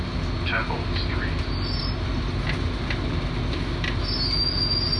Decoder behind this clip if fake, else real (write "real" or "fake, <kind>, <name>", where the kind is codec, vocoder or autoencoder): real